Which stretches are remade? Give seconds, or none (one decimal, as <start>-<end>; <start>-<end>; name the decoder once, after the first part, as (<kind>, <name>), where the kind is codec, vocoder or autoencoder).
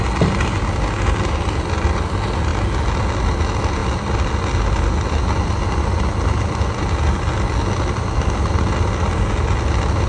none